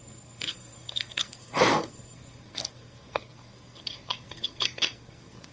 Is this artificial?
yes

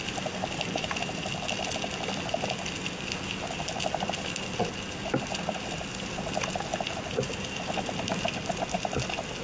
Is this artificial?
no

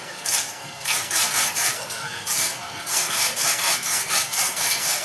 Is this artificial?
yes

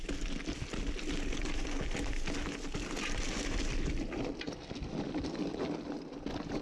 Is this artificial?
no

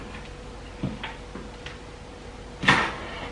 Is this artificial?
no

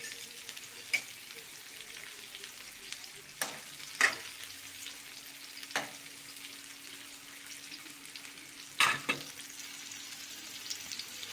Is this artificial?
no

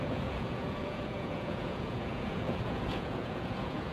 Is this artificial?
yes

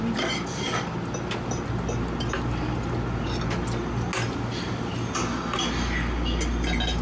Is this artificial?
no